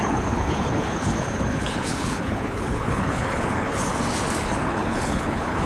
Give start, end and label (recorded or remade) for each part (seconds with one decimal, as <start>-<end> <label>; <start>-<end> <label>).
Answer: 0.0-3.9 remade; 3.9-4.4 recorded; 4.4-5.7 remade